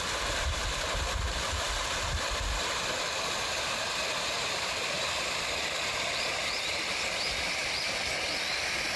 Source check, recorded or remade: remade